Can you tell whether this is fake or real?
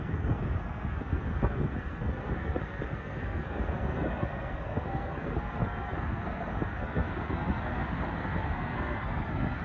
fake